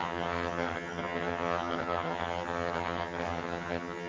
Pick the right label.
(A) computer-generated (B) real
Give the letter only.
A